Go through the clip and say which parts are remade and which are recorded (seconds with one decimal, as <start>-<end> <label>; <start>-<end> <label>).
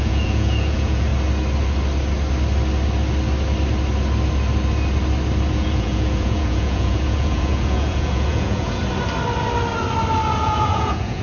0.0-1.1 remade; 1.1-5.5 recorded; 5.5-8.8 remade; 8.8-10.4 recorded; 10.4-11.2 remade